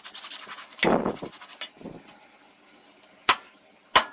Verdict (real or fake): real